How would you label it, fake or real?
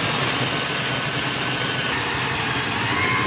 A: real